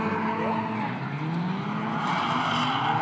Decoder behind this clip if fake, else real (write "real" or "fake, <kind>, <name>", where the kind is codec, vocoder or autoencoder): real